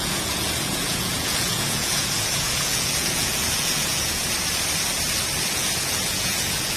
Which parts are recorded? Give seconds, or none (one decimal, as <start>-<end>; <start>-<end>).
4.2-5.5